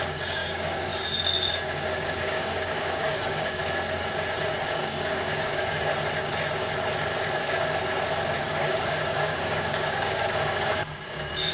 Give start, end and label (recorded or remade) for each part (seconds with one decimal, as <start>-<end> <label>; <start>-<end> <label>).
0.0-0.9 remade; 0.9-1.5 recorded; 1.5-3.6 remade; 3.6-4.7 recorded; 4.7-5.9 remade; 5.9-8.4 recorded; 8.4-11.5 remade